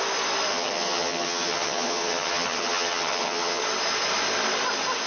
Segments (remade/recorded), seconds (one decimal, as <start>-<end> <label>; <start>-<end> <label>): 0.0-0.5 recorded; 0.5-3.6 remade; 3.6-5.1 recorded